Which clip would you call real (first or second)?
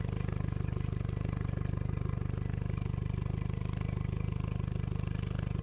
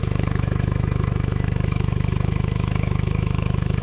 first